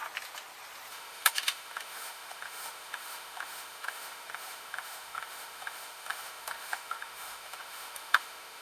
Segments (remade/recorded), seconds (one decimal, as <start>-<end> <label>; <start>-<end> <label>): 0.0-0.9 recorded; 0.9-8.6 remade